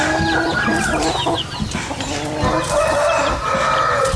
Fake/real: real